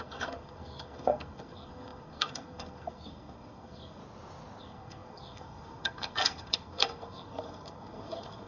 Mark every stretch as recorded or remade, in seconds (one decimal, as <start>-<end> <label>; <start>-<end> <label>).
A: 0.0-4.0 remade; 4.0-4.6 recorded; 4.6-8.5 remade